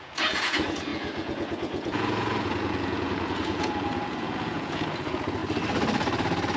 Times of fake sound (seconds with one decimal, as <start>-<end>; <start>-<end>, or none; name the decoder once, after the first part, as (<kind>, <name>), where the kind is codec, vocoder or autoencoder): 0.0-5.4 (vocoder, Vocos)